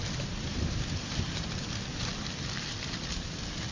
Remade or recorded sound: recorded